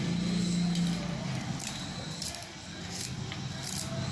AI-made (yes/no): no